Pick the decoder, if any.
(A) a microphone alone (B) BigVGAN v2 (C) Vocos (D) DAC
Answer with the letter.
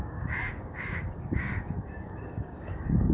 D